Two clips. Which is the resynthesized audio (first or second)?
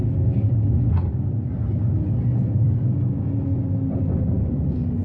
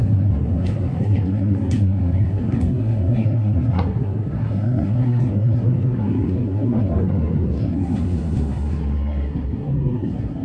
second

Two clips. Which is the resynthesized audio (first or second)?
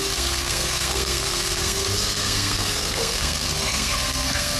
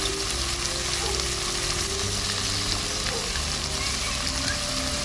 first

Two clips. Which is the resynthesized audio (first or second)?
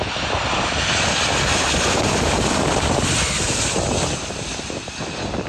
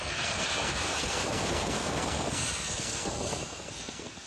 second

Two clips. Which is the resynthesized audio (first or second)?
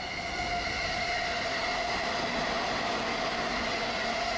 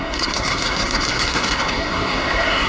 second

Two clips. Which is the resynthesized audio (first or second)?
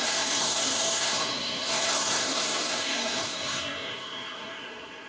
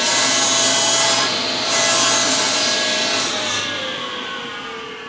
first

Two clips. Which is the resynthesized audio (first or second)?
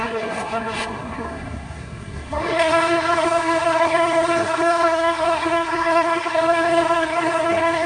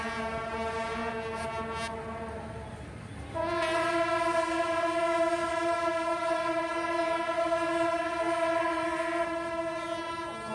first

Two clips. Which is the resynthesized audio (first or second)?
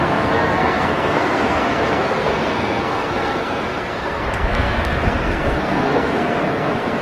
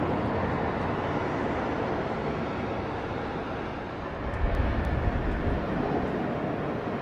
first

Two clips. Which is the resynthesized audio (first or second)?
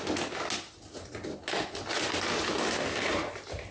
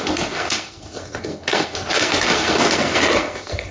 second